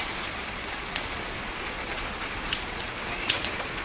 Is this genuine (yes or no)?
no